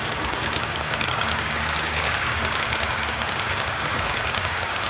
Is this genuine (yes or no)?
no